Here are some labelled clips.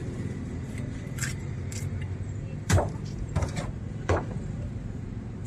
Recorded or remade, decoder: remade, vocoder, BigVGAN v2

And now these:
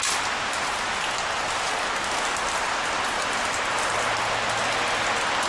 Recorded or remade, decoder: recorded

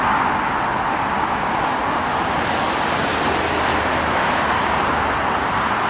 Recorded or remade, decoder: recorded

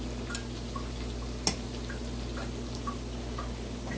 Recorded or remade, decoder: recorded